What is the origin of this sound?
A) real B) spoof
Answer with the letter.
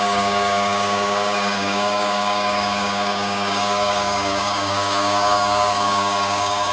B